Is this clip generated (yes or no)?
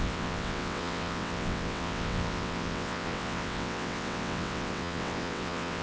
yes